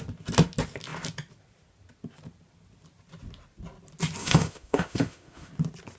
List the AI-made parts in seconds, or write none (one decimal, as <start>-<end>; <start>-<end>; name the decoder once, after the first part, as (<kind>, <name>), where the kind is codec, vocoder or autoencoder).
4.2-5.5 (autoencoder, DAC-VAE)